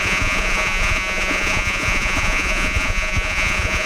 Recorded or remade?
remade